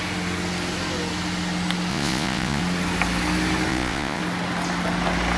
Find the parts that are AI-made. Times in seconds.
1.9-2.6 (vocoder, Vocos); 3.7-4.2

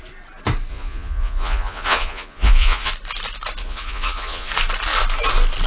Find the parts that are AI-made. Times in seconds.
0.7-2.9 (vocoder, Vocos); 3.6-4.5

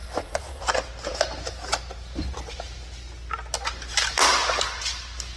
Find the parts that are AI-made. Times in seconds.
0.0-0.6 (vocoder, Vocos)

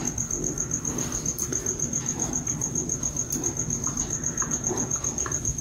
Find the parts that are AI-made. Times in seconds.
4.4-5.0 (vocoder, Vocos)

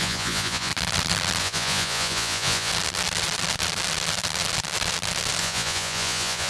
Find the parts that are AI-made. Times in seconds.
0.0-0.7 (vocoder, Vocos); 1.4-2.7; 5.4-6.5